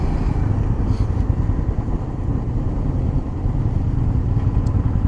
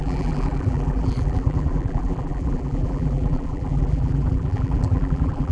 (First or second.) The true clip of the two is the first